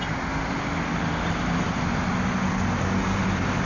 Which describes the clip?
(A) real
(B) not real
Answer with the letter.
A